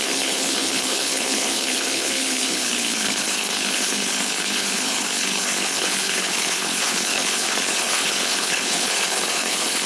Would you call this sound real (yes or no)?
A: no